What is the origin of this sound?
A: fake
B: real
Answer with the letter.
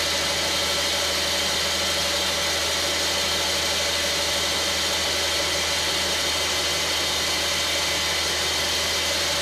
B